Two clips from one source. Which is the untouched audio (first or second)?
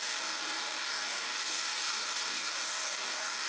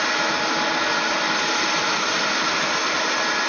second